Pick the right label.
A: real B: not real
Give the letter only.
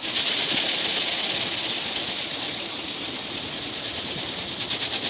A